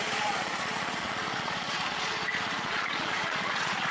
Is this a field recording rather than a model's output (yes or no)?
no